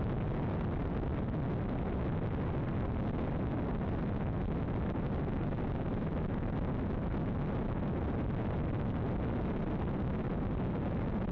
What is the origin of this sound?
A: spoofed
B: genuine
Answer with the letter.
B